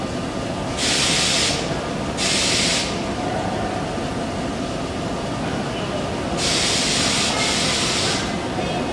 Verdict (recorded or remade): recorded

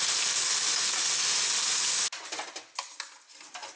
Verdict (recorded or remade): recorded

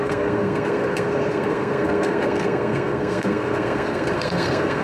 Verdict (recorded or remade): remade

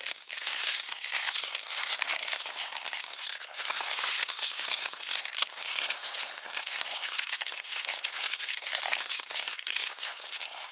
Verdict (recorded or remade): remade